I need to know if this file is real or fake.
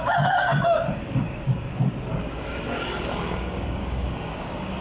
fake